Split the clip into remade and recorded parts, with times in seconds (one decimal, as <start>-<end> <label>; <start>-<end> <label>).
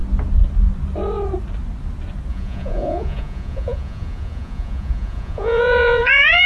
0.0-2.3 recorded; 2.3-6.5 remade